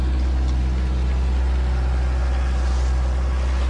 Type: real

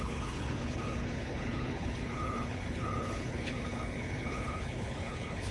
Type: fake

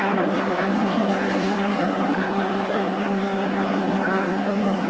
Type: fake